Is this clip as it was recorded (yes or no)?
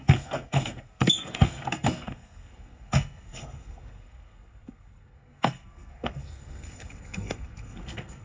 no